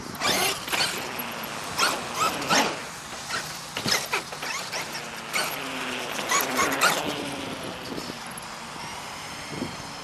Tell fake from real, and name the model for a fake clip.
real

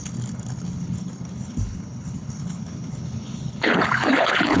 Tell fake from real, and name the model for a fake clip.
fake, codec, HILCodec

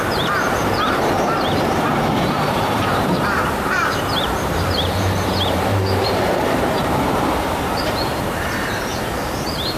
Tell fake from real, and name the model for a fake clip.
fake, vocoder, BigVGAN v2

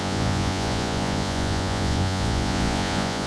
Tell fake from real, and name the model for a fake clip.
fake, vocoder, Vocos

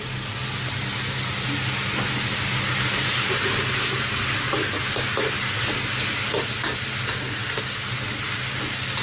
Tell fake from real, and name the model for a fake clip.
real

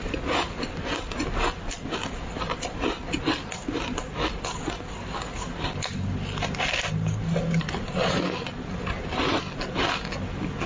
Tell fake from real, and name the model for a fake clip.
real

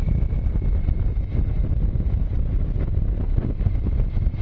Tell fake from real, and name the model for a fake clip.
real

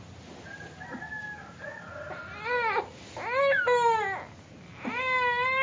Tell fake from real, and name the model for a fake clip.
real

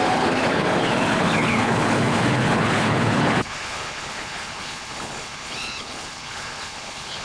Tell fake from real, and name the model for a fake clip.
fake, codec, HILCodec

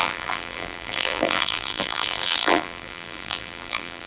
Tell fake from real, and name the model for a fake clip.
fake, vocoder, BigVGAN v2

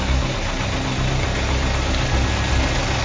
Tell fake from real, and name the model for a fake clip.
real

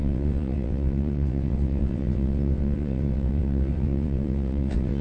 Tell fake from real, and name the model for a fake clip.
fake, vocoder, WaveNeXt